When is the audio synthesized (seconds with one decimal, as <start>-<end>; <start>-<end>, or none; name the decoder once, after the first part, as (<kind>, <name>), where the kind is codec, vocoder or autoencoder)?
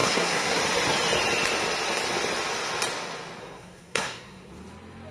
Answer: 0.0-0.6 (codec, SNAC); 3.4-4.5